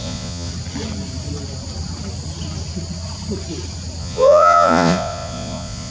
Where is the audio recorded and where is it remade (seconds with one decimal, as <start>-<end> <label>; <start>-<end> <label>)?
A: 0.0-0.5 remade; 0.5-4.0 recorded; 4.0-5.9 remade